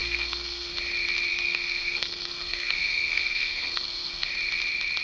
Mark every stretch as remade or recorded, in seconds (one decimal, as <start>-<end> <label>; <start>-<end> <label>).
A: 0.0-0.7 remade; 0.7-1.3 recorded; 1.3-4.3 remade; 4.3-5.0 recorded